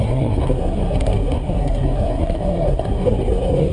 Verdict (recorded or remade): remade